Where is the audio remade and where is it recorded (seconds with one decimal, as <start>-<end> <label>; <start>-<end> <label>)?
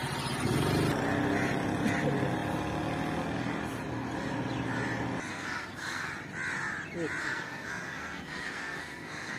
0.0-5.3 recorded; 5.3-6.1 remade; 6.1-7.2 recorded; 7.2-9.4 remade